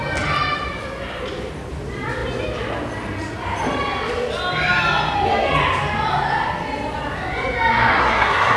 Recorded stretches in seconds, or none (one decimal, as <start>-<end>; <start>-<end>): 0.0-7.9